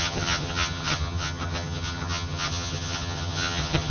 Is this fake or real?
fake